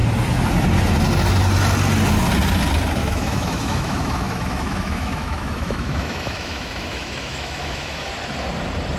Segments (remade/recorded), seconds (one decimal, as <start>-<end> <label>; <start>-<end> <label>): 0.0-3.0 recorded; 3.0-8.1 remade; 8.1-9.0 recorded